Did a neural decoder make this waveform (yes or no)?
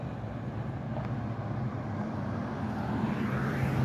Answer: no